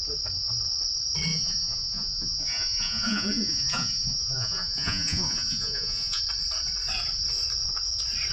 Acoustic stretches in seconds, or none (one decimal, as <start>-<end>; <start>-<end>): 0.0-1.3; 6.2-8.3